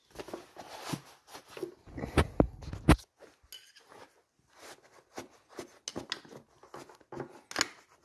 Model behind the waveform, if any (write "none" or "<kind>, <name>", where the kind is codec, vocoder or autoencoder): none